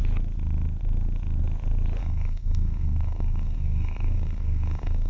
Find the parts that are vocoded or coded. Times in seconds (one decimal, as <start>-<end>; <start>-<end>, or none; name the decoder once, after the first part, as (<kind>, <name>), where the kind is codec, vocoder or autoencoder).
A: 2.0-5.1 (codec, SNAC)